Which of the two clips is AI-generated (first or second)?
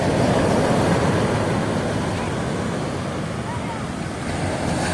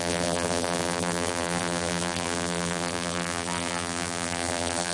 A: second